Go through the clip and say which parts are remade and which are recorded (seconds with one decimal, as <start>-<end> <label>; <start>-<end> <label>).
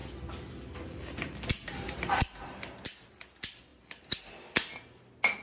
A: 0.0-5.4 recorded